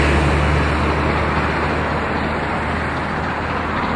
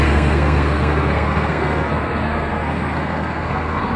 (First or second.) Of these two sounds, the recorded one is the first